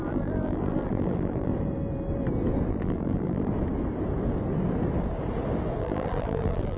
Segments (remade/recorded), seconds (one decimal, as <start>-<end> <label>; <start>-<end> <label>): 0.0-1.5 remade; 1.5-2.7 recorded; 2.7-3.5 remade; 3.5-5.8 recorded; 5.8-6.8 remade